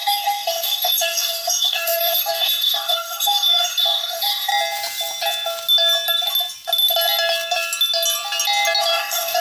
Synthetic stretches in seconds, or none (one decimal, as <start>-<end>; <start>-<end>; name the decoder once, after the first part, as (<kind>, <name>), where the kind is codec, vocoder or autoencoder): 0.0-4.5 (codec, DAC); 8.8-9.4